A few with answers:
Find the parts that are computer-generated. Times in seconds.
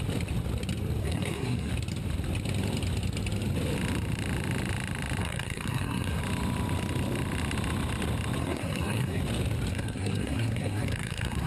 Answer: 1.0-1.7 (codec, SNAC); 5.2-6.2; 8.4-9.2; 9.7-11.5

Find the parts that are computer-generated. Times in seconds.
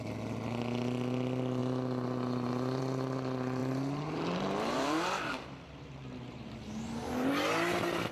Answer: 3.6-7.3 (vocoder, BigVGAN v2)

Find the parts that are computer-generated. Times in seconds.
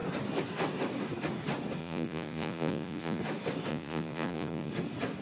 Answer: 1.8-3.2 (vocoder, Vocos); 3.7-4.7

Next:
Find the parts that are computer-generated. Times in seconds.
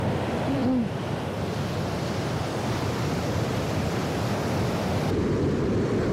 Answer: 0.0-6.1 (vocoder, BigVGAN v2)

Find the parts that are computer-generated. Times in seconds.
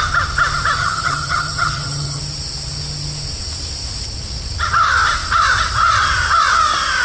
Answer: 0.8-2.2 (vocoder, HiFi-GAN)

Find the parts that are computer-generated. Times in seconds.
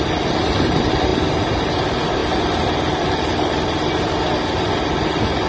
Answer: none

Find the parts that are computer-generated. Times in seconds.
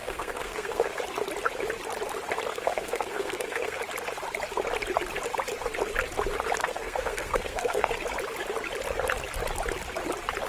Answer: 0.0-1.0 (codec, SNAC); 2.5-3.8; 6.6-7.9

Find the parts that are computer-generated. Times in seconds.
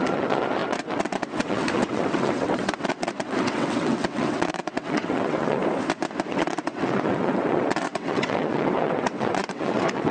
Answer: 0.0-5.6 (vocoder, WaveNeXt); 6.3-10.1